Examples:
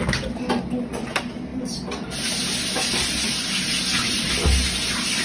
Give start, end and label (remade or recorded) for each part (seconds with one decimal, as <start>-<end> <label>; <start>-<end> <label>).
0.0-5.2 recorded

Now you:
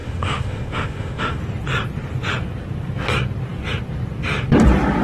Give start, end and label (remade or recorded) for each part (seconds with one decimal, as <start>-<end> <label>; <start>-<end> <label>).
0.0-1.4 remade; 1.4-5.0 recorded

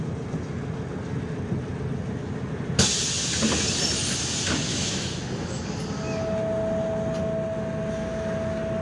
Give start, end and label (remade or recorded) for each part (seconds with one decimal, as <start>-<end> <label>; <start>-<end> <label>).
0.0-4.7 recorded; 4.7-5.6 remade; 5.6-8.8 recorded

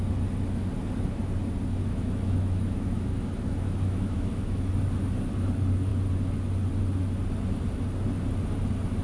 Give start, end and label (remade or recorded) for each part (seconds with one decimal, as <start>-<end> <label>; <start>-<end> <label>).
0.0-1.8 recorded; 1.8-4.7 remade; 4.7-9.0 recorded

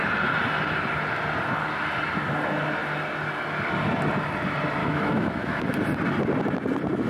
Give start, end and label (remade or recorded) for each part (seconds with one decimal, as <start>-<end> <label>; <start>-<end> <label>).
0.0-4.8 recorded; 4.8-5.6 remade; 5.6-7.1 recorded

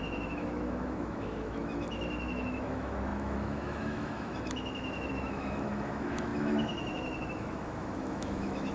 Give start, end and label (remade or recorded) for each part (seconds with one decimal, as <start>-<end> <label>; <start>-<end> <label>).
0.0-8.7 remade

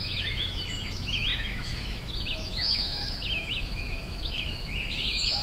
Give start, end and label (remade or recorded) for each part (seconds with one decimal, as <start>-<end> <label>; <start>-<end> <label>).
0.0-5.4 remade

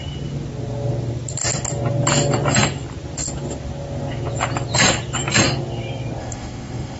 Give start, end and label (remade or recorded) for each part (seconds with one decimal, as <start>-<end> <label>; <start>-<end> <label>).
0.0-6.2 recorded; 6.2-7.0 remade